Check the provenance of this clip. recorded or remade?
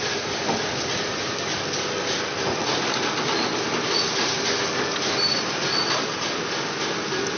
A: recorded